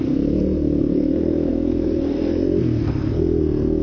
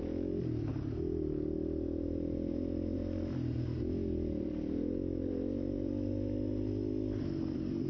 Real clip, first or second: second